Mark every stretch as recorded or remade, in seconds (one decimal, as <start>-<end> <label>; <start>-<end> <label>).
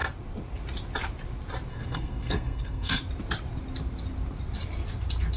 0.0-1.7 recorded; 1.7-3.0 remade; 3.0-5.4 recorded